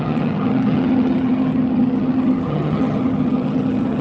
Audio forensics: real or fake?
fake